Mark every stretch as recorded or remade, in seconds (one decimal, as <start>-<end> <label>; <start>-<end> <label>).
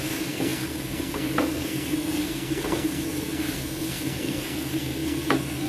0.0-5.7 remade